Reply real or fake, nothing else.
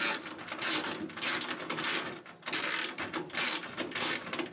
real